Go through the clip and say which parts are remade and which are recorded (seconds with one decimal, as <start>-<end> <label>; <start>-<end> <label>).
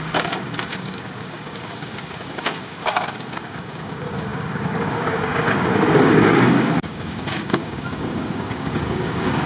0.0-9.5 remade